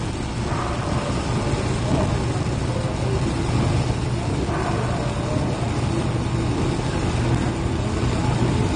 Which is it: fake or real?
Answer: real